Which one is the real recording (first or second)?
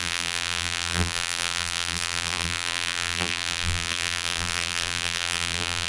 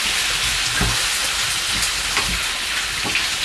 second